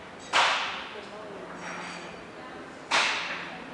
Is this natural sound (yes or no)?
yes